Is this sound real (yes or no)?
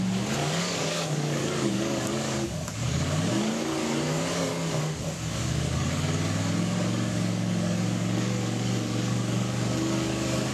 no